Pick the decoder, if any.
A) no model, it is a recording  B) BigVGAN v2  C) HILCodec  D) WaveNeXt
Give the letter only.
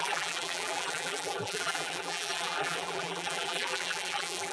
B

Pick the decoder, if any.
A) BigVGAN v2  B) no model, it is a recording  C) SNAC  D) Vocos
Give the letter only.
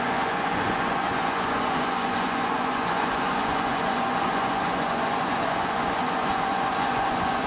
D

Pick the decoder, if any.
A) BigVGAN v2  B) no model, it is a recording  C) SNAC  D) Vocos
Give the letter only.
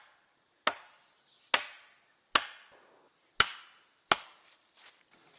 B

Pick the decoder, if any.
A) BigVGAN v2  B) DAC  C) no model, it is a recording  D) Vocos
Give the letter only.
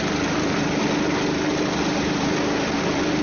C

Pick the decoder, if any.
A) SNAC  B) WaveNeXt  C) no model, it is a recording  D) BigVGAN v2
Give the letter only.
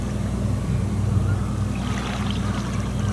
C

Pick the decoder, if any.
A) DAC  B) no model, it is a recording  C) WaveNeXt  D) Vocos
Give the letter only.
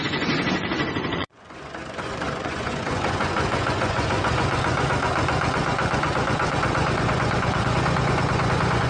D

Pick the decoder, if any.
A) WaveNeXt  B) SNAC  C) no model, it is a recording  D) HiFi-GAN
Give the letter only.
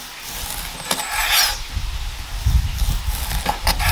C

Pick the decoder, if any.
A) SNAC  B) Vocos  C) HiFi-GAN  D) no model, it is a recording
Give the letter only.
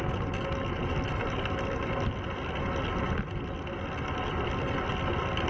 D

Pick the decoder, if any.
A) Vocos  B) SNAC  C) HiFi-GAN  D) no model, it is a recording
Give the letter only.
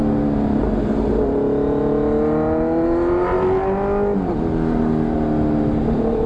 D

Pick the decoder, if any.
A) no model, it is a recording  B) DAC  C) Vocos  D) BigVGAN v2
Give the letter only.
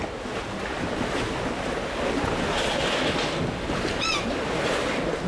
A